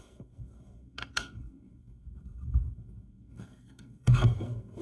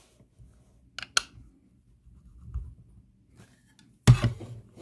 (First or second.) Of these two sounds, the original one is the second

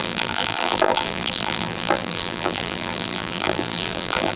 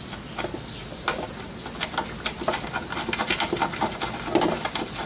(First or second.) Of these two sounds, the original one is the second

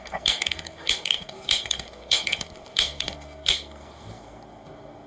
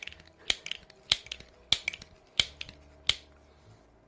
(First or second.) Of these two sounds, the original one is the second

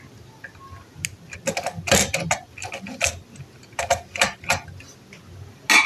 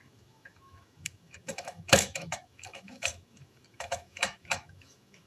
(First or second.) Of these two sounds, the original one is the first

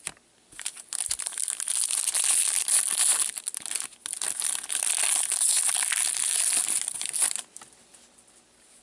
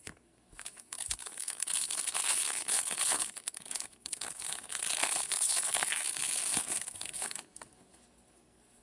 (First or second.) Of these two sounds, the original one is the first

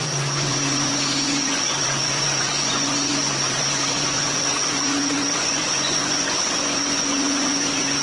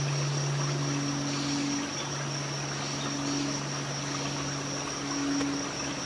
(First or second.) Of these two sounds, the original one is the second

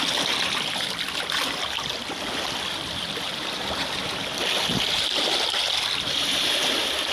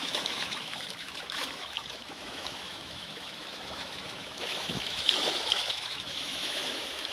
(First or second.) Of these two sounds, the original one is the first